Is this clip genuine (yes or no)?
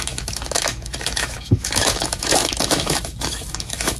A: no